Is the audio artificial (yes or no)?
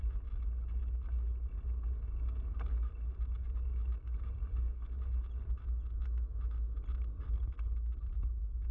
no